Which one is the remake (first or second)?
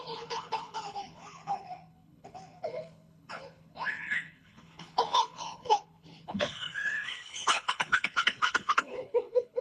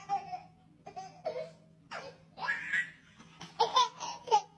first